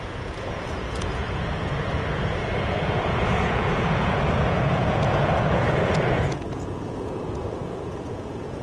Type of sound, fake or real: fake